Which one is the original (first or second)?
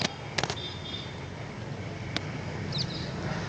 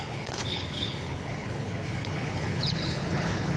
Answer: first